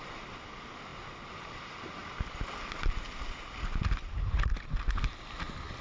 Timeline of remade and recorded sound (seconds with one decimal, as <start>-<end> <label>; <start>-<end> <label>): 0.0-0.9 recorded; 0.9-1.6 remade; 1.6-5.8 recorded